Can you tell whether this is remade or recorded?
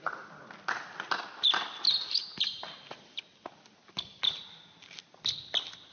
recorded